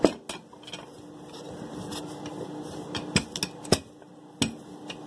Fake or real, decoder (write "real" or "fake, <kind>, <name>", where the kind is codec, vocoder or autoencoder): real